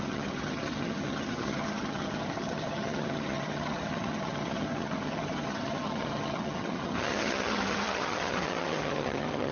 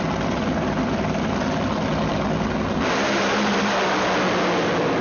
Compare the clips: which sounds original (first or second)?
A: second